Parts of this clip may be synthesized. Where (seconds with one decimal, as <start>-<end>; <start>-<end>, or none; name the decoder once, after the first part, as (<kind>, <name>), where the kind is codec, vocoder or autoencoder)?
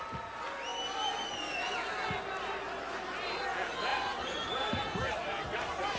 3.9-6.0 (vocoder, BigVGAN v2)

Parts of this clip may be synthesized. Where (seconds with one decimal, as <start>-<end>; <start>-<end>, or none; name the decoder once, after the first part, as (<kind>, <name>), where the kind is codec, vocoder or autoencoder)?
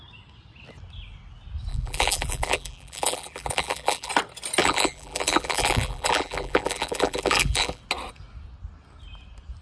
1.7-4.1 (vocoder, BigVGAN v2); 4.6-7.8